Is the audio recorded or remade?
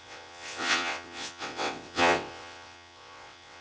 remade